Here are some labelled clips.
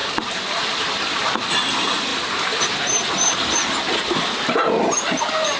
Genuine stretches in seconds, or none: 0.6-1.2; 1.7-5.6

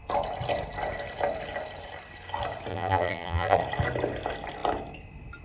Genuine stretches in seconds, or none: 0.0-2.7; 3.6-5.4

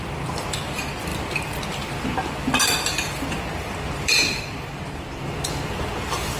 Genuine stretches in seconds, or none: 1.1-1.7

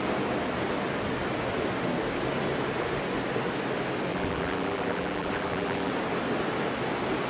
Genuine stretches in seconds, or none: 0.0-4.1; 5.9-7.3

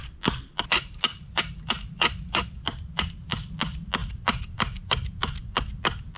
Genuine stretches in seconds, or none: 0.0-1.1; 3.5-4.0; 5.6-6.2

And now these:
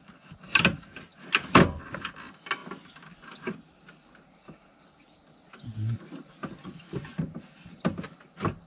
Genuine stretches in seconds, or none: 0.0-2.6; 6.3-7.1; 8.1-8.7

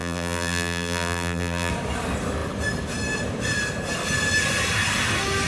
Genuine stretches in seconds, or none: 1.7-5.5